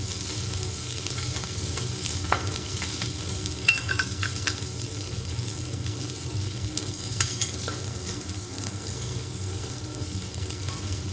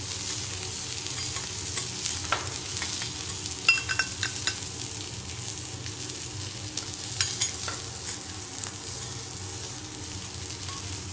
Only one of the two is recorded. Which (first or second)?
second